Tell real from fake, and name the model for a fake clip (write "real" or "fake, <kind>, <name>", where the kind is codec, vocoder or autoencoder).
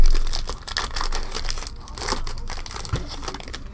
real